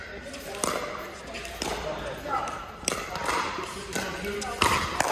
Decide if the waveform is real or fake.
real